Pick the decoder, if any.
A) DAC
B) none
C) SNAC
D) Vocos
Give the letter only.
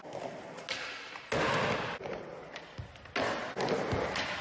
B